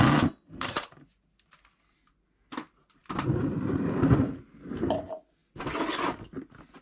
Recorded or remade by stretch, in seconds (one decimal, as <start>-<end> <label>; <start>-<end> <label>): 0.0-3.0 recorded; 3.0-4.9 remade; 4.9-6.8 recorded

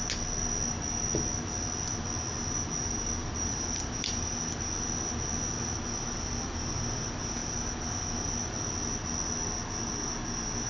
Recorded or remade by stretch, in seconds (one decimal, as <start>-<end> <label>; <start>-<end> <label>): 0.0-3.2 recorded; 3.2-4.5 remade; 4.5-10.7 recorded

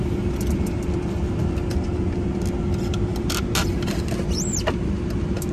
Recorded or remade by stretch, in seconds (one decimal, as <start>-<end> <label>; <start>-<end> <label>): 0.0-5.5 recorded

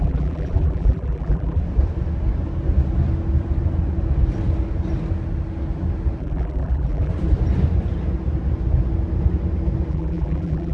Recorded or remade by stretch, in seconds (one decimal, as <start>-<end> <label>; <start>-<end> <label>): 0.0-1.6 remade; 1.6-6.2 recorded; 6.2-7.1 remade; 7.1-9.9 recorded; 9.9-10.7 remade

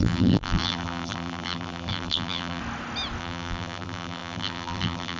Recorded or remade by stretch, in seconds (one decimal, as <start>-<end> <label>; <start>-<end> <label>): 0.0-2.6 remade; 2.6-3.2 recorded; 3.2-5.2 remade

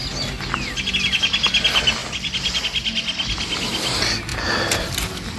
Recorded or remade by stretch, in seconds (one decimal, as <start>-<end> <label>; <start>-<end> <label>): 0.0-2.0 recorded; 2.0-2.6 remade; 2.6-4.3 recorded; 4.3-4.9 remade; 4.9-5.4 recorded